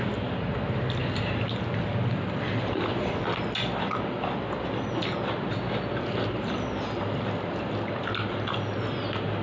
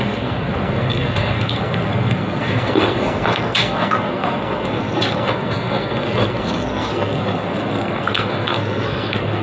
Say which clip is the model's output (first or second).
second